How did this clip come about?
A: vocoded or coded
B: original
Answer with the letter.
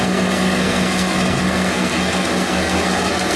A